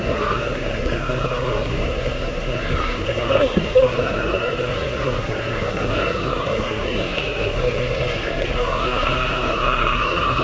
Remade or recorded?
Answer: remade